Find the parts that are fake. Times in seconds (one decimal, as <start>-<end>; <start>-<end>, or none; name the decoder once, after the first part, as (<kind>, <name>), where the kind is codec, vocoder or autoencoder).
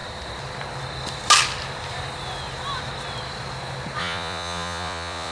4.0-5.3 (vocoder, Vocos)